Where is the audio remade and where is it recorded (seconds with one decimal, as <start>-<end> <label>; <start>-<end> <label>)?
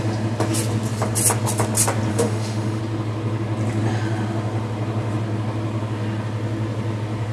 0.0-2.1 recorded; 2.1-2.8 remade; 2.8-7.3 recorded